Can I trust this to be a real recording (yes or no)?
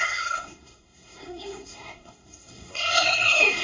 no